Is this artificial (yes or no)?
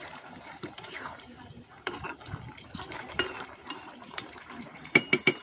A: yes